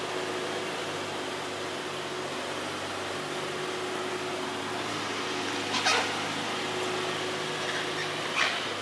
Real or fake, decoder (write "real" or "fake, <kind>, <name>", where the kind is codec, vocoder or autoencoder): real